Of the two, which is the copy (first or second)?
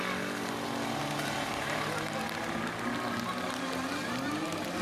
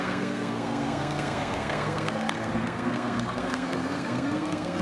second